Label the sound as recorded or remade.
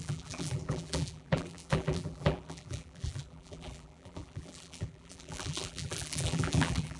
remade